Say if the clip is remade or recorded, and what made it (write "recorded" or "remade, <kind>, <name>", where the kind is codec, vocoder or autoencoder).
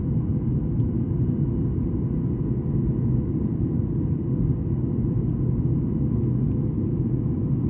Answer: recorded